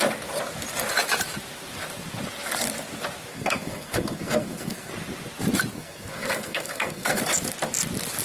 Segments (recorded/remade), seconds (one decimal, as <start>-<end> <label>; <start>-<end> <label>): 0.0-3.3 recorded; 3.3-4.9 remade; 4.9-5.7 recorded; 5.7-7.2 remade; 7.2-8.2 recorded